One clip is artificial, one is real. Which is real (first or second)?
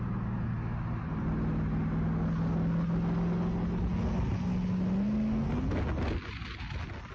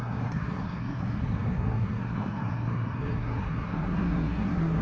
first